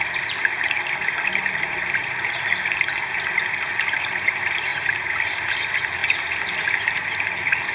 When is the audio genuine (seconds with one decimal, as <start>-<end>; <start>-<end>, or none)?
6.0-6.6